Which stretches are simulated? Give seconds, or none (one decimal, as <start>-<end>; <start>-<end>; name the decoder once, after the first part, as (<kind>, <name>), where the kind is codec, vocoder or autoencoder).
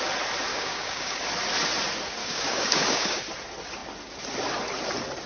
0.5-1.2 (codec, DAC); 2.2-3.2